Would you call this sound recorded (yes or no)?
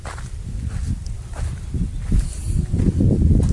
yes